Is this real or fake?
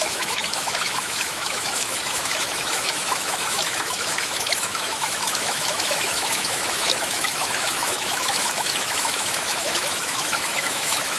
fake